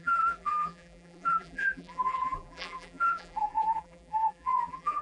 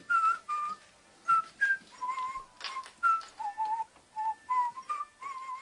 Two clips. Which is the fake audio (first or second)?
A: first